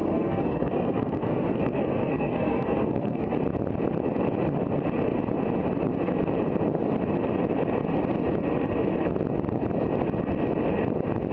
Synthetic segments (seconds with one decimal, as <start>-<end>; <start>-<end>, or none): 0.0-3.3